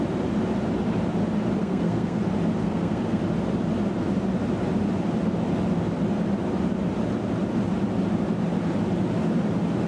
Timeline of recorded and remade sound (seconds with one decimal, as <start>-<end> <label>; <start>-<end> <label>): 0.0-1.6 recorded; 1.6-2.2 remade; 2.2-2.6 recorded; 2.6-3.2 remade; 3.2-9.9 recorded